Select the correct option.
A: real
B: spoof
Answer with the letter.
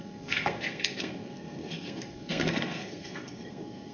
B